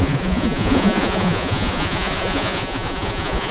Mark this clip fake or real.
fake